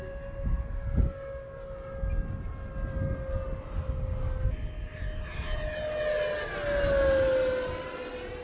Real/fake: real